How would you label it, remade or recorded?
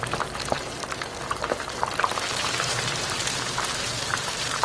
remade